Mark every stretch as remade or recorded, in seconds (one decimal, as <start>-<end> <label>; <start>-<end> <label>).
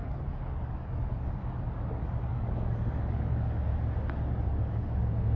0.0-3.7 remade; 3.7-4.4 recorded; 4.4-5.4 remade